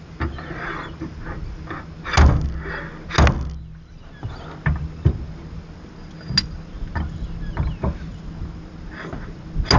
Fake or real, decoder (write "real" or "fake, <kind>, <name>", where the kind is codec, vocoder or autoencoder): real